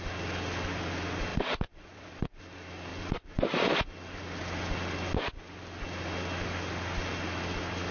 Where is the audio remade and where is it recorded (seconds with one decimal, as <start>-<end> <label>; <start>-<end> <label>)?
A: 0.0-1.3 recorded; 1.3-2.4 remade; 2.4-7.9 recorded

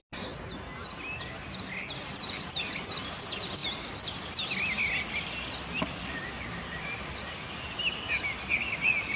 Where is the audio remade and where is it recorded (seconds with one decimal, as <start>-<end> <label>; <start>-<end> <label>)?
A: 0.0-9.2 recorded

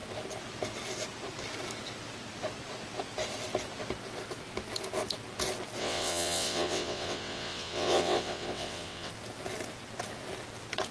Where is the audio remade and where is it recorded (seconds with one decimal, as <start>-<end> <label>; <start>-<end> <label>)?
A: 0.0-5.8 recorded; 5.8-9.1 remade; 9.1-10.9 recorded